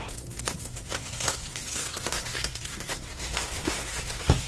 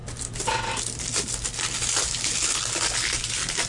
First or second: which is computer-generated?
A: first